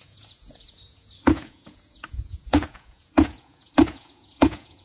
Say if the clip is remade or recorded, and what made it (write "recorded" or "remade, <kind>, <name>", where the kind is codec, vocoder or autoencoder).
remade, vocoder, Vocos